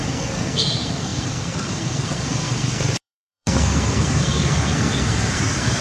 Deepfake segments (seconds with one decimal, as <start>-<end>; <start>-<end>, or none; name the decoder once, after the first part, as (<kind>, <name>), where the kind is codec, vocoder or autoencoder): 0.0-5.8 (codec, SNAC)